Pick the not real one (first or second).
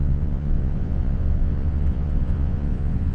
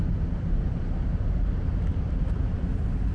first